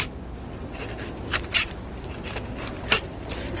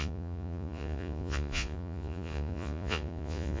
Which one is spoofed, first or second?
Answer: second